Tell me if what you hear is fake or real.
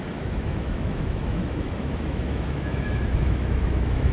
fake